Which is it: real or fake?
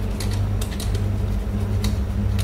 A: real